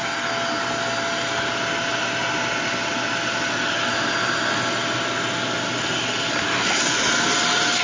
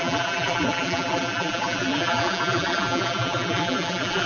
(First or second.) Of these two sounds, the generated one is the second